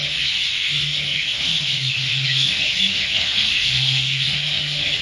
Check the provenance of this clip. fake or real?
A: fake